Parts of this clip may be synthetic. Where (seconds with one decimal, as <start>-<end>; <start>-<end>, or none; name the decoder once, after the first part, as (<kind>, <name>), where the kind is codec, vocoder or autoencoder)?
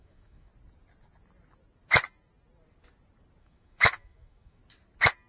0.0-0.5 (autoencoder, DAC-VAE); 3.4-4.6